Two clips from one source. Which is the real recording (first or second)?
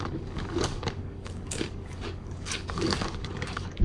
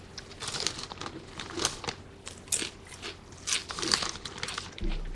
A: second